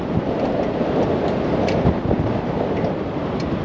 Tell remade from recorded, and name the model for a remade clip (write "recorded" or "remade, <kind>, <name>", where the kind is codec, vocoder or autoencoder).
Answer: recorded